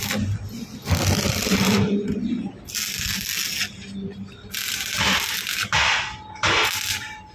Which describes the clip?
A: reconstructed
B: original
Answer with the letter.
B